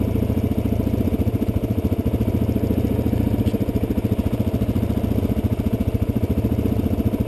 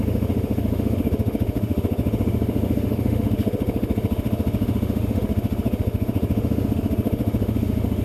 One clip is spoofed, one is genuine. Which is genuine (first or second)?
first